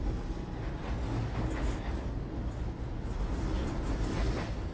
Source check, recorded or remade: recorded